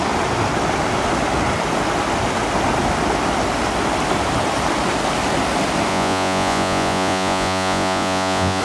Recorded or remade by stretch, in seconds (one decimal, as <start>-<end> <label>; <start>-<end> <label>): 0.0-5.9 recorded; 5.9-8.6 remade